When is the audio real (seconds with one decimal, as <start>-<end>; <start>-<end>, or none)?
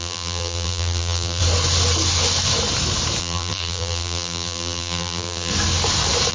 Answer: 1.4-3.2; 5.5-6.3